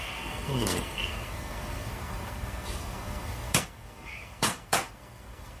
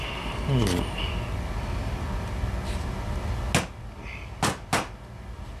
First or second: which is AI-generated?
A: first